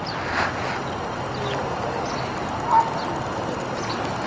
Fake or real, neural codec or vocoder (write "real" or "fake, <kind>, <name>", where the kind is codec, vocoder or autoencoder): real